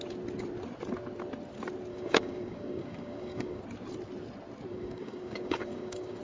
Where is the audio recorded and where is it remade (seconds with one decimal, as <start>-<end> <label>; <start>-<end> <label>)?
0.0-1.9 recorded; 1.9-3.6 remade; 3.6-4.7 recorded; 4.7-6.2 remade